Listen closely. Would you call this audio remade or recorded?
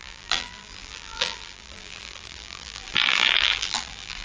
remade